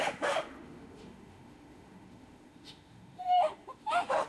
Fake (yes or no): yes